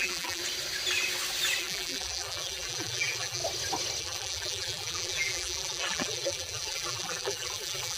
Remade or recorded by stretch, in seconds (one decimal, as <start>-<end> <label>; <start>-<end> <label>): 0.0-0.4 remade; 0.4-1.6 recorded; 1.6-3.4 remade; 3.4-4.0 recorded; 4.0-8.0 remade